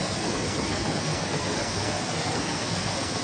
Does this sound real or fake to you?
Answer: fake